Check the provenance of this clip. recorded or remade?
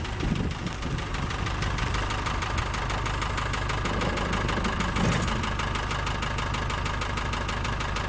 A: recorded